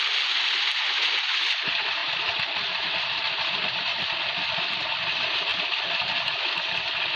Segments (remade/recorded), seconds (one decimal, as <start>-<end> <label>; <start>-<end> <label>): 0.0-2.0 recorded; 2.0-3.0 remade; 3.0-7.2 recorded